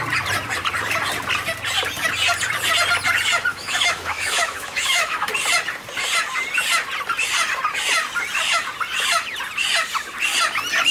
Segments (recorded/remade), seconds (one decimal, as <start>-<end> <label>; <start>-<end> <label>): 0.0-3.5 recorded; 3.5-5.3 remade; 5.3-10.9 recorded